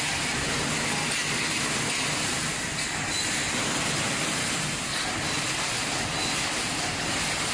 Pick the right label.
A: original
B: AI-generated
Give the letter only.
A